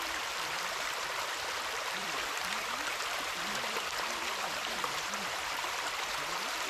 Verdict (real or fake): fake